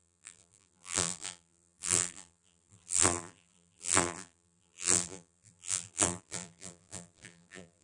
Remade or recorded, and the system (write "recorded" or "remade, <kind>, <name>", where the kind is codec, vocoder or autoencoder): remade, vocoder, BigVGAN v2